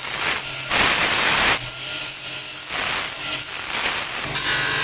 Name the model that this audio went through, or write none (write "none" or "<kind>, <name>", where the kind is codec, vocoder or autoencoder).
none